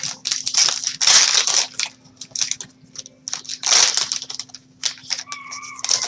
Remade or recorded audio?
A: recorded